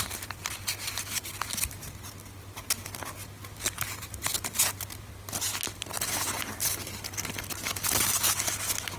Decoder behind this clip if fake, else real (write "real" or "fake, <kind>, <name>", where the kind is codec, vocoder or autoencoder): real